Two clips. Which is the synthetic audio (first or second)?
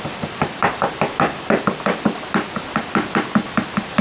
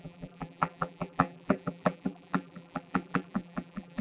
second